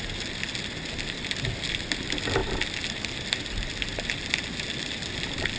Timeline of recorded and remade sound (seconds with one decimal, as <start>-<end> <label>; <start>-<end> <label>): 0.0-5.6 recorded